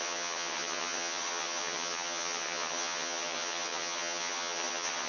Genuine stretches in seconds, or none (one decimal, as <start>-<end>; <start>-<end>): none